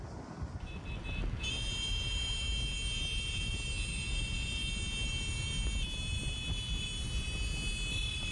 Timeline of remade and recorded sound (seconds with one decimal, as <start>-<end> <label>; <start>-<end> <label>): 0.0-8.3 recorded